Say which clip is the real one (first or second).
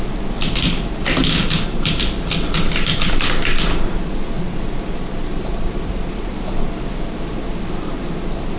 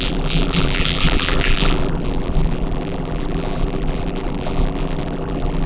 first